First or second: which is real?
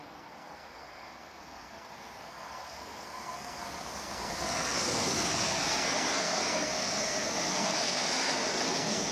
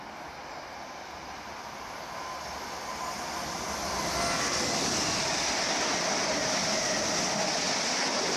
second